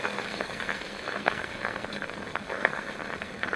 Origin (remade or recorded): remade